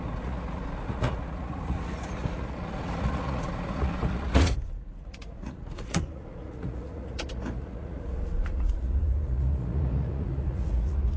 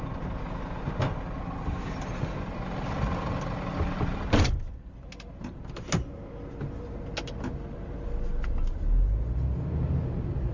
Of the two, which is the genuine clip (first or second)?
second